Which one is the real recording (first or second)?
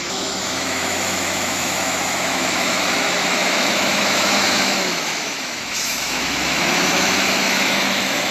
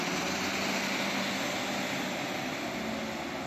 second